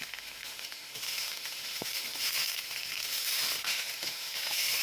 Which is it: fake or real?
fake